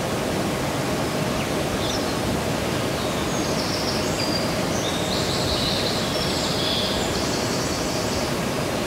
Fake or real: real